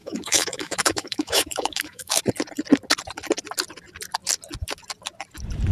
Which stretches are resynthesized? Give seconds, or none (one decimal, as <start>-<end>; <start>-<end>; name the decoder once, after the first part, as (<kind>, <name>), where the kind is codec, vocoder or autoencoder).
0.0-2.2 (autoencoder, DAC-VAE)